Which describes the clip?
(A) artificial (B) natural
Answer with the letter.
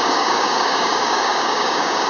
A